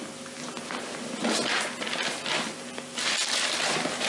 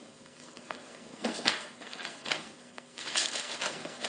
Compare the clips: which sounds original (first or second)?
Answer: first